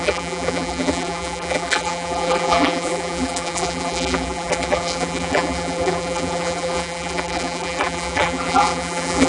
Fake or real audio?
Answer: fake